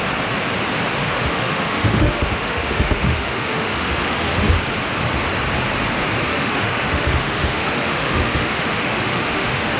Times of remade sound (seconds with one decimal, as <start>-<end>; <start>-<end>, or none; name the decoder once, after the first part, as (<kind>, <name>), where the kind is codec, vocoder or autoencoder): 1.0-4.5 (autoencoder, DAC-VAE); 6.3-9.8